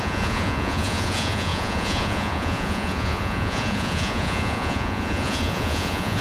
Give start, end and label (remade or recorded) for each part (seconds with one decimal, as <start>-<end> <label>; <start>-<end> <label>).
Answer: 0.0-6.2 remade